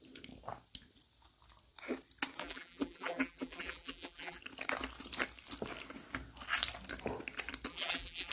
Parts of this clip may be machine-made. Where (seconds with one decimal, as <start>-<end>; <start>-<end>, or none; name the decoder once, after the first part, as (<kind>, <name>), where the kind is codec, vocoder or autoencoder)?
2.4-4.4 (vocoder, BigVGAN v2); 7.7-8.3